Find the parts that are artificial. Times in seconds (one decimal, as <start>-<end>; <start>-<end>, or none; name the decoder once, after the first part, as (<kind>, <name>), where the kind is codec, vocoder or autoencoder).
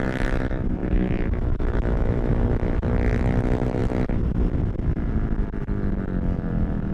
0.8-2.3 (autoencoder, DAC-VAE)